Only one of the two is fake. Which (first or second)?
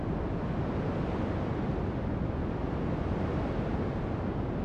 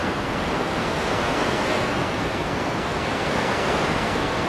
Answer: second